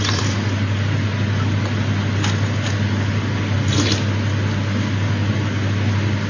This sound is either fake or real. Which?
real